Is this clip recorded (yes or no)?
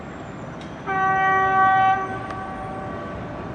yes